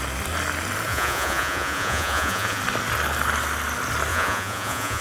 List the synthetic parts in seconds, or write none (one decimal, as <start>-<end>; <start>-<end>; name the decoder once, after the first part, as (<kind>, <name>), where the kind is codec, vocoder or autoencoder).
0.9-2.6 (vocoder, Vocos); 4.1-5.0